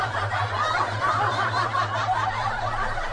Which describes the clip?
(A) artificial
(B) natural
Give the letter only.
A